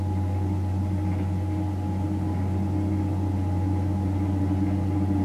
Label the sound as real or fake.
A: real